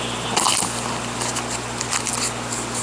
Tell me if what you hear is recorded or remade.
recorded